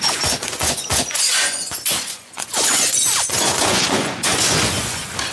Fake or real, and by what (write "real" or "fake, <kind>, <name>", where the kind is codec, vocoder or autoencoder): fake, vocoder, Vocos